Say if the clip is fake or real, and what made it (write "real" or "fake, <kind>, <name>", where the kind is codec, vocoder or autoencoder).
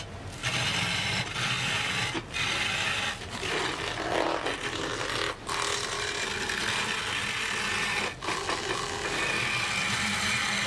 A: real